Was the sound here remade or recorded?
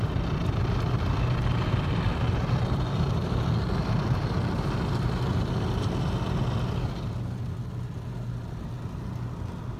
recorded